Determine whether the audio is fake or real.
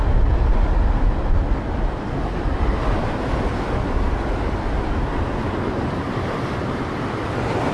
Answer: real